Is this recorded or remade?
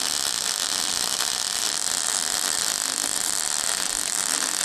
recorded